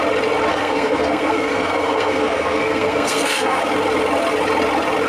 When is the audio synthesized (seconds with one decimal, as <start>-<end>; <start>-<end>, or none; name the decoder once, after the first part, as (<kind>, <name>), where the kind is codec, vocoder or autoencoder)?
0.5-3.6 (codec, SNAC)